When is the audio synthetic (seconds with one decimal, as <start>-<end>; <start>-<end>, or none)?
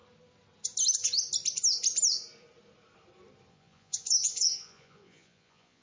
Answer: 3.5-5.8